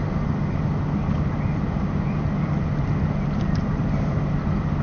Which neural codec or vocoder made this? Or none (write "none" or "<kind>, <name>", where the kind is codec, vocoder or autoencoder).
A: none